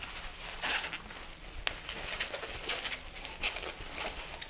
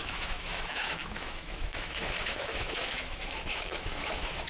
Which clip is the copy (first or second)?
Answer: second